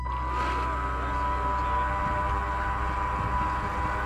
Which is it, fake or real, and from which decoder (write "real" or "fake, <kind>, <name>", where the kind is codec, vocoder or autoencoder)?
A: real